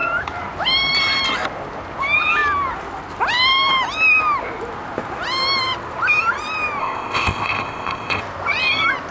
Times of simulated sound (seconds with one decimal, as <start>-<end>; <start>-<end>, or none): 6.8-8.2

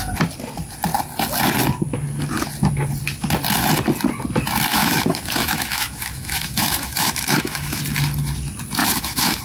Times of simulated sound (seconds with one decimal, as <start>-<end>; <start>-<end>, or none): 4.7-7.8; 8.8-9.4

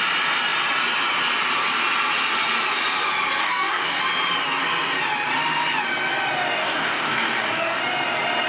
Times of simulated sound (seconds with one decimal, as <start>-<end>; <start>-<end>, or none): 3.4-4.0; 6.6-7.8

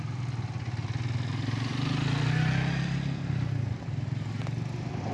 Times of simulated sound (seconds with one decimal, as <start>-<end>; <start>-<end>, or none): none

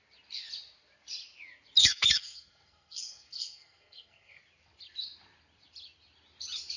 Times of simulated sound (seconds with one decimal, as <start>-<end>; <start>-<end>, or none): 1.8-4.4